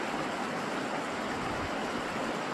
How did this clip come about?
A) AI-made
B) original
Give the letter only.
B